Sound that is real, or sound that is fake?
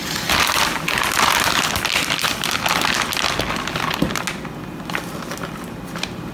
real